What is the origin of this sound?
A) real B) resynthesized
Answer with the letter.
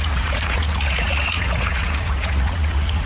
B